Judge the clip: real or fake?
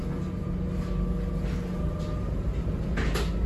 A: real